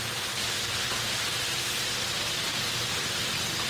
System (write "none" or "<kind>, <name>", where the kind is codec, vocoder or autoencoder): none